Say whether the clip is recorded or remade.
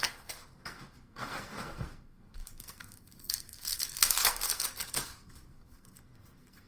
remade